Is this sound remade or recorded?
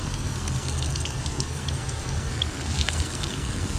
remade